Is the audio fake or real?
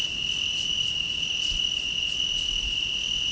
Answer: real